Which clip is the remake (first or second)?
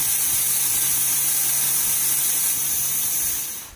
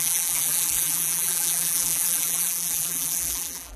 second